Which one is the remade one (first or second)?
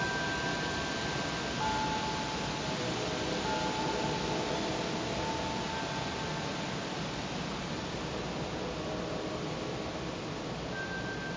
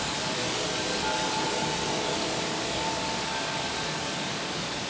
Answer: second